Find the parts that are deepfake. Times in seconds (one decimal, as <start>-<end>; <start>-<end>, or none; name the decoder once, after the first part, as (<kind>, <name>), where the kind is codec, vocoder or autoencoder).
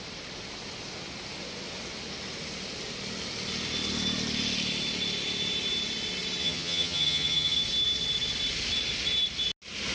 6.4-7.6 (vocoder, HiFi-GAN)